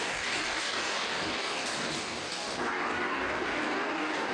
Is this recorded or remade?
remade